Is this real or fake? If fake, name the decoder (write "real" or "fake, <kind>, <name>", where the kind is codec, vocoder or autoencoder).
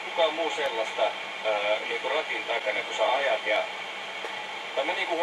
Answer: real